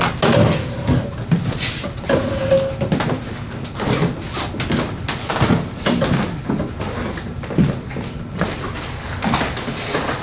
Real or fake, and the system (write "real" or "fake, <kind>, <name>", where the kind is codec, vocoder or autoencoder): real